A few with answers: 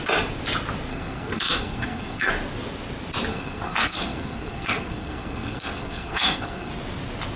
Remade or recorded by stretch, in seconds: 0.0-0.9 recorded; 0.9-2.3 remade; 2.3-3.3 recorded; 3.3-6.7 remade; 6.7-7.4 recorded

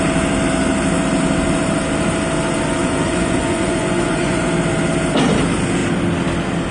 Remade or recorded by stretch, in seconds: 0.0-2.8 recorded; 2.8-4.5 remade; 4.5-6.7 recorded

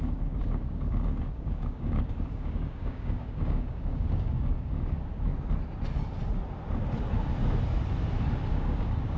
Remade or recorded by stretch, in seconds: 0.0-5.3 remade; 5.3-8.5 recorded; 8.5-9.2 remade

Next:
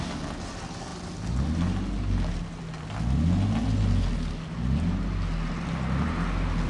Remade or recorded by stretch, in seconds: 0.0-6.7 recorded